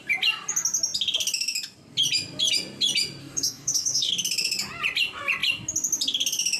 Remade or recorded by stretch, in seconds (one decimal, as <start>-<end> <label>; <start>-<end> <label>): 0.0-3.2 recorded; 3.2-4.1 remade; 4.1-6.6 recorded